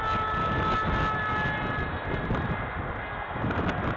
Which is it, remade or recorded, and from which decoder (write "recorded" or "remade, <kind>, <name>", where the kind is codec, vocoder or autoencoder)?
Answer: recorded